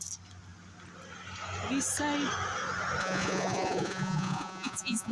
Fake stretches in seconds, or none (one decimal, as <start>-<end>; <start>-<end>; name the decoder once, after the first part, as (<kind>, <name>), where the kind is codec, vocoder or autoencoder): 3.0-5.1 (vocoder, Vocos)